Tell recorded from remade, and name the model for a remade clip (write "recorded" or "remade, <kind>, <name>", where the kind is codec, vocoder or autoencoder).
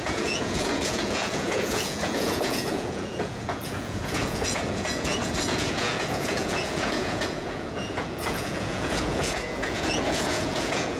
remade, vocoder, Vocos